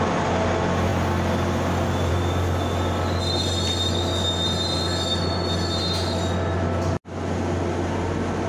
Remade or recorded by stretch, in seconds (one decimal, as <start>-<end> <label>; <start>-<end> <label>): 0.0-8.5 recorded